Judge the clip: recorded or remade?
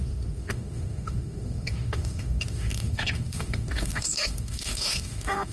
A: remade